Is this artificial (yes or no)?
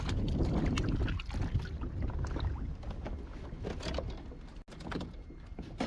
no